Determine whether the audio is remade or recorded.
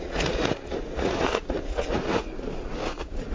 remade